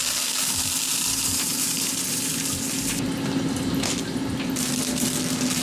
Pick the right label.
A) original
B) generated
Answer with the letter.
A